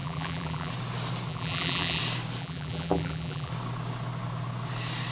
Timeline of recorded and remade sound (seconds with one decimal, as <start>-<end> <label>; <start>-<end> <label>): 0.0-0.7 remade; 0.7-1.3 recorded; 1.3-2.0 remade; 2.0-2.4 recorded; 2.4-3.5 remade; 3.5-5.1 recorded